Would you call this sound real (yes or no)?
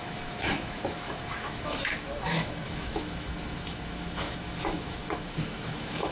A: no